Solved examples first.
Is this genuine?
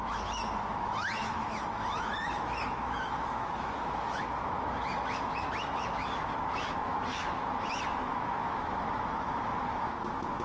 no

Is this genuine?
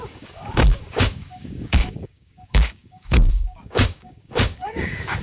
no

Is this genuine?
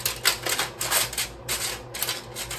yes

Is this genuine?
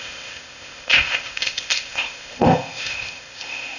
no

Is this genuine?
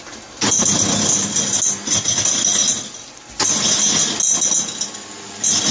yes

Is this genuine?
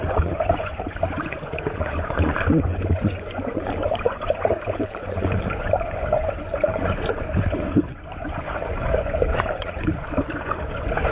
no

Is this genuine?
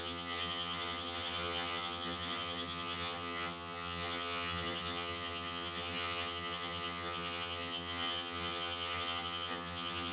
no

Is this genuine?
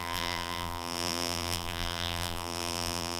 no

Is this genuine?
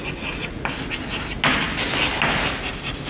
yes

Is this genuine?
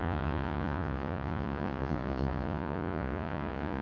no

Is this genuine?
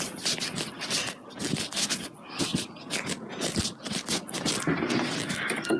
yes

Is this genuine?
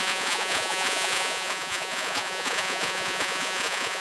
no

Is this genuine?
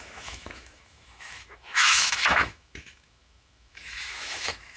no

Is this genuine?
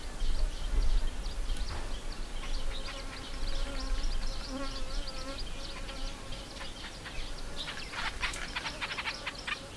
yes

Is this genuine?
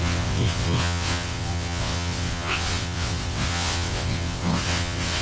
no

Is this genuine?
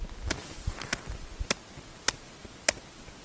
yes